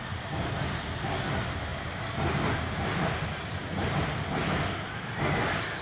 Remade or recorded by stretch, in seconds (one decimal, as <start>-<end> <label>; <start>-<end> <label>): 0.0-5.8 recorded